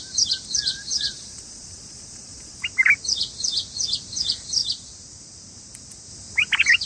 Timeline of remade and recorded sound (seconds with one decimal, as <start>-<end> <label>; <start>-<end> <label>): 0.0-0.7 recorded; 0.7-2.6 remade; 2.6-6.9 recorded